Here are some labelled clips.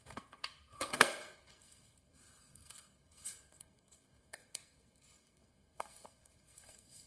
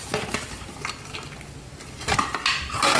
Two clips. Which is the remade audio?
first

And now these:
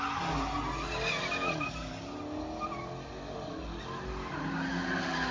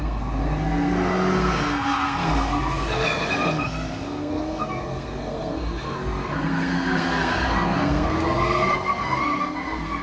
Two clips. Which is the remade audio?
second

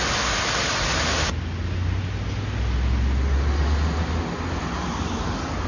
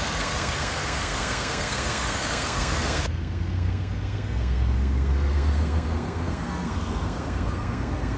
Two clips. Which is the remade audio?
second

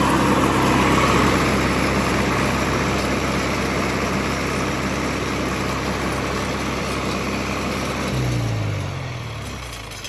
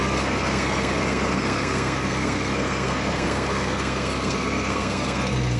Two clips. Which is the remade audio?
second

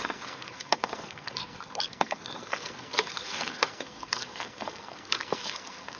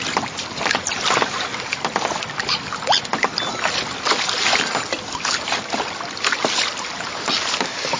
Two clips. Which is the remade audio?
first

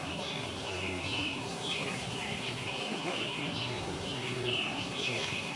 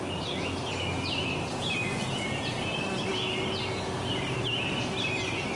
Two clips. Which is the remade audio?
first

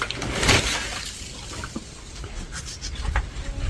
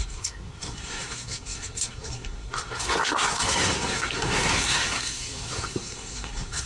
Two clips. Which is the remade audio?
second